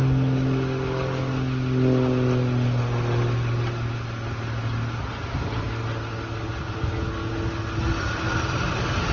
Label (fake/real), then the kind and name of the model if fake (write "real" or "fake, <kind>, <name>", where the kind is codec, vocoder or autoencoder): real